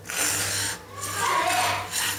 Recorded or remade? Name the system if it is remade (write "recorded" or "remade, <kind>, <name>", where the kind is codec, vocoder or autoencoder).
recorded